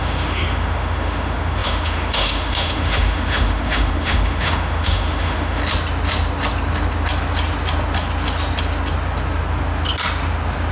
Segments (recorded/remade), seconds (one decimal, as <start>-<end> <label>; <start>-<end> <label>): 0.0-5.6 remade; 5.6-10.7 recorded